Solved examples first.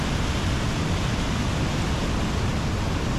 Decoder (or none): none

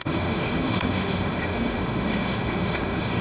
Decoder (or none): autoencoder, DAC-VAE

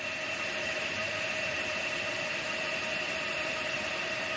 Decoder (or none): vocoder, BigVGAN v2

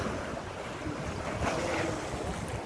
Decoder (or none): none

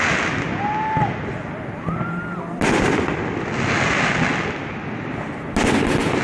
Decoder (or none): none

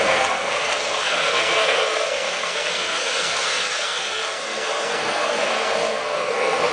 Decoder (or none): codec, SNAC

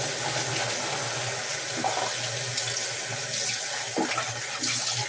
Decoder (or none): none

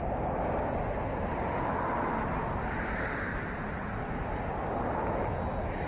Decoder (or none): none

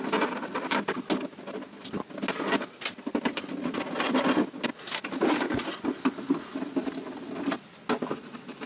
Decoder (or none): none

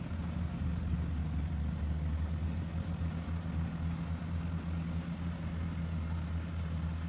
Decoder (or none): none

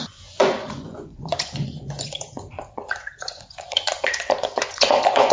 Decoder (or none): vocoder, Vocos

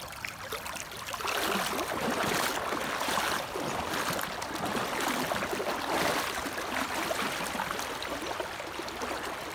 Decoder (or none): none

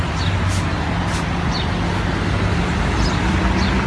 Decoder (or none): none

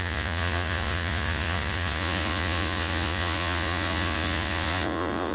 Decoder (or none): vocoder, Vocos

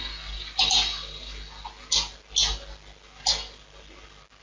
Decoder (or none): none